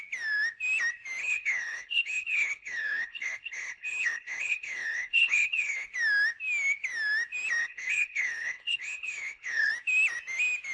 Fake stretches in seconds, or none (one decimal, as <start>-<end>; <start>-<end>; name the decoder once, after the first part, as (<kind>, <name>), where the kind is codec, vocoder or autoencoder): 1.2-5.9 (codec, HILCodec); 7.6-9.7